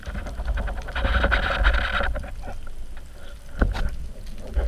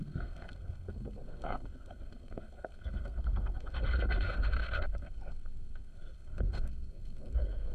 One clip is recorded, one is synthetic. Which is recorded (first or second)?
first